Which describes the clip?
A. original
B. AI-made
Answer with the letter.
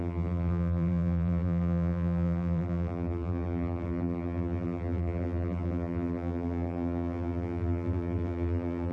B